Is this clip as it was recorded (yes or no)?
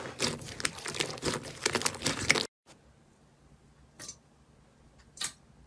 yes